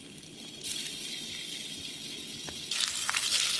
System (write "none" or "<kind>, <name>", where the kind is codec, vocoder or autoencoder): none